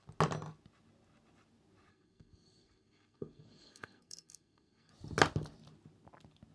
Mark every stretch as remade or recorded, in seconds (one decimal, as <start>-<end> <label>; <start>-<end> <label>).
0.0-1.9 recorded; 1.9-4.9 remade; 4.9-6.5 recorded